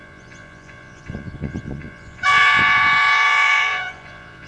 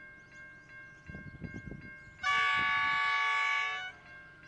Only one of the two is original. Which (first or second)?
second